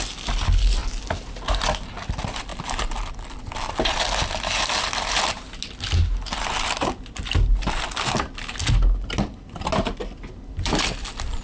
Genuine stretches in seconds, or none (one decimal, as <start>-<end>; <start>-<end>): 0.0-11.4